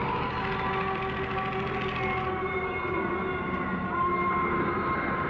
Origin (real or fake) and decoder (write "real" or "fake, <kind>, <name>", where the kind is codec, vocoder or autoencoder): real